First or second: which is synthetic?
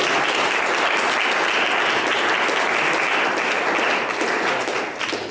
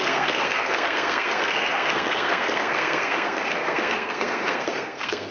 second